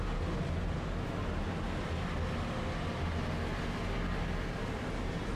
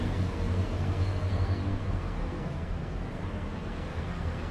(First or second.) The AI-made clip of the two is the second